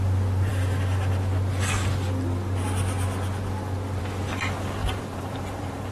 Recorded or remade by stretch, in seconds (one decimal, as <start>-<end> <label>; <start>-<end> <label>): 0.0-4.8 recorded; 4.8-5.9 remade